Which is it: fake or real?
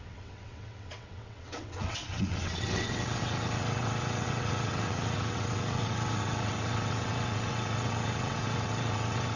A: fake